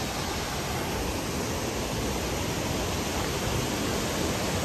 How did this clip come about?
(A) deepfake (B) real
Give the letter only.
B